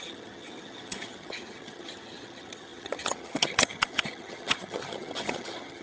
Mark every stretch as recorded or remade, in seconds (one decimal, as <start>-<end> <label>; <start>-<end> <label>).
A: 0.0-5.8 remade